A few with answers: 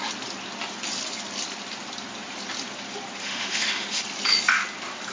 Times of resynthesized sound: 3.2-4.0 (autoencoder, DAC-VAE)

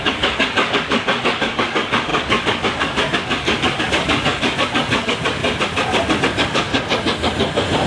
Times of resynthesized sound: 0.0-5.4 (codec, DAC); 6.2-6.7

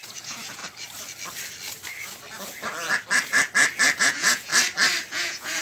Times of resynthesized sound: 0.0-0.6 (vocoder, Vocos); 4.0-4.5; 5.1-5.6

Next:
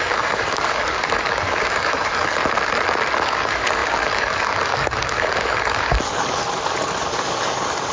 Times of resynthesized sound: 0.0-2.4 (codec, DAC); 3.2-6.4; 7.0-7.9

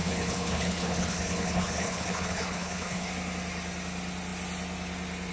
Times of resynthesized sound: 0.0-3.1 (codec, HILCodec)